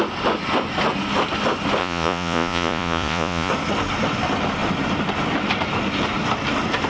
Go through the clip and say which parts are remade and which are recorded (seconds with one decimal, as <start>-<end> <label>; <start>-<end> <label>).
0.0-1.8 recorded; 1.8-3.5 remade; 3.5-6.9 recorded